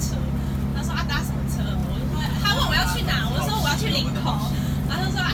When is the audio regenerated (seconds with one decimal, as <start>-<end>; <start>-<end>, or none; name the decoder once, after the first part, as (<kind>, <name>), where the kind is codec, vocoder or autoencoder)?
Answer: 1.8-5.3 (vocoder, BigVGAN v2)